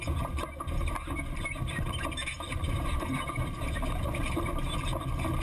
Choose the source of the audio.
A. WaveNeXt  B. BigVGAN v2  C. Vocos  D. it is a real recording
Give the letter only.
B